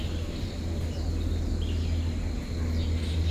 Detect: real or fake real